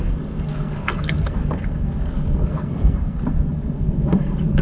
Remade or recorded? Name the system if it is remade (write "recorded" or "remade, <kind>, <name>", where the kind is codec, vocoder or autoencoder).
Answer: remade, codec, SNAC